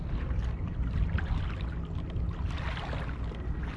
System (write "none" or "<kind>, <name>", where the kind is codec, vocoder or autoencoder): none